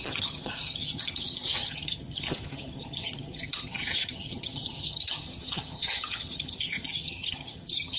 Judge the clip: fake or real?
fake